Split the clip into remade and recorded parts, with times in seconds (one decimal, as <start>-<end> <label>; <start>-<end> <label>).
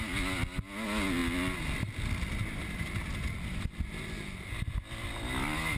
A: 0.0-5.8 recorded